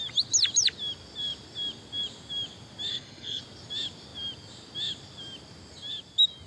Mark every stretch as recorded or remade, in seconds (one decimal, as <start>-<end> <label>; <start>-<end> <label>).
0.0-2.9 recorded; 2.9-3.4 remade; 3.4-6.5 recorded